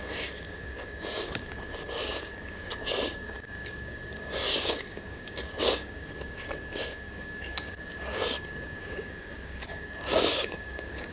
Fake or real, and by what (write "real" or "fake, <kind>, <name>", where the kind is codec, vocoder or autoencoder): fake, codec, DAC